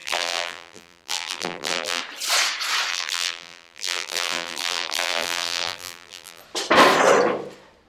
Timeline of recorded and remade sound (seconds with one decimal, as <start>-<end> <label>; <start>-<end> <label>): 0.0-2.0 remade; 2.0-2.9 recorded; 2.9-6.4 remade; 6.4-7.9 recorded

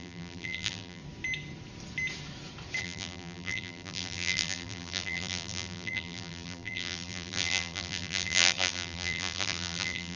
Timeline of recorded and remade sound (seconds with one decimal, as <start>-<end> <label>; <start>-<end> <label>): 0.0-1.0 remade; 1.0-2.8 recorded; 2.8-10.2 remade

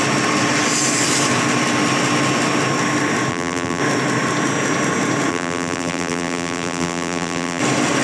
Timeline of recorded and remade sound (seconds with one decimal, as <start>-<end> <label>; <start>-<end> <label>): 0.0-3.3 recorded; 3.3-3.8 remade; 3.8-5.3 recorded; 5.3-7.6 remade; 7.6-8.0 recorded

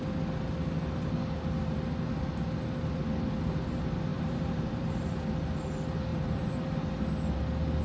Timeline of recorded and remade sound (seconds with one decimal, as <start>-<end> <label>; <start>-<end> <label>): 0.0-4.1 recorded; 4.1-5.0 remade; 5.0-6.1 recorded; 6.1-7.1 remade; 7.1-7.8 recorded

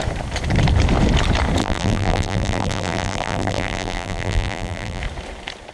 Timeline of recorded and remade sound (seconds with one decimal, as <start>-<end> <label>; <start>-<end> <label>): 0.0-1.6 recorded; 1.6-5.0 remade; 5.0-5.7 recorded

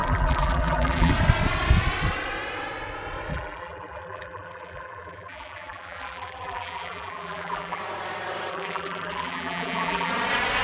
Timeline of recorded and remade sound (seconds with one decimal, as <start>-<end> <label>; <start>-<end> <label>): 0.0-1.1 remade; 1.1-3.3 recorded; 3.3-7.8 remade; 7.8-8.5 recorded; 8.5-10.1 remade; 10.1-10.6 recorded

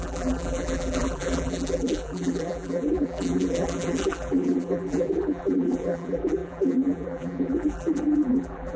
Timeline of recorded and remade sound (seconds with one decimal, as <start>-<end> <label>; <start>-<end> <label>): 0.0-8.8 remade